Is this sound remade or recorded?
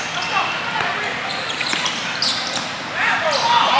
recorded